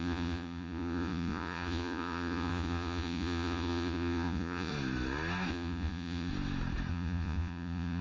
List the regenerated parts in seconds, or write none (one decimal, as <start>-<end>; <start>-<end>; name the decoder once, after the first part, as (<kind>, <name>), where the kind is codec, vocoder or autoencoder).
0.0-4.7 (vocoder, Vocos); 5.5-6.3; 6.9-8.0